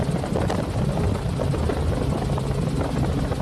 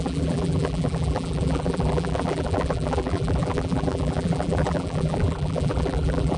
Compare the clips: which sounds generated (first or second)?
second